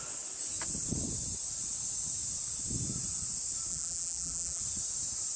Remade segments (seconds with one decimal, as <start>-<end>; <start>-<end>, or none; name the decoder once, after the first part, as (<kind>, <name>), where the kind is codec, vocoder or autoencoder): 3.7-4.6 (vocoder, BigVGAN v2)